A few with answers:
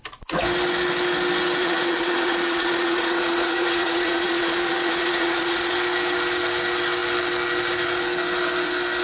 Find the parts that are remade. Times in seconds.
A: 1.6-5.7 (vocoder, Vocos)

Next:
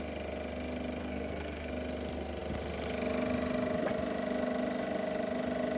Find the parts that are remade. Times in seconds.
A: 1.0-1.7 (codec, SNAC)

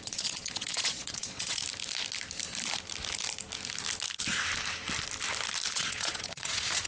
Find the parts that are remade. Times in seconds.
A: 0.0-1.6 (vocoder, Vocos); 5.7-6.9

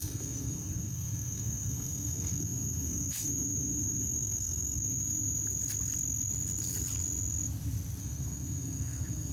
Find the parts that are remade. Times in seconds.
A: 0.0-5.1 (codec, SNAC); 8.0-9.3

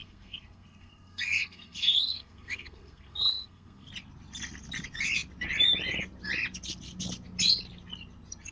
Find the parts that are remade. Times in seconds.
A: 0.0-3.9 (codec, SNAC)